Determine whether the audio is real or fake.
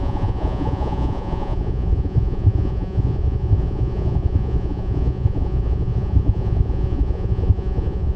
fake